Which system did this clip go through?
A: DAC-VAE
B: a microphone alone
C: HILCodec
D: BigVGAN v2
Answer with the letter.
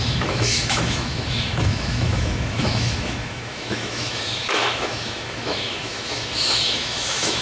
A